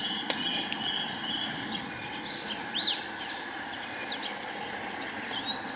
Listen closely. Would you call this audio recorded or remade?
recorded